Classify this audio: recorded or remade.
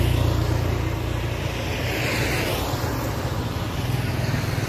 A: recorded